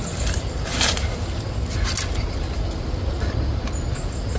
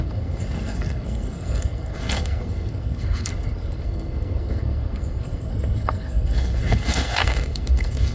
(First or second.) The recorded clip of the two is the first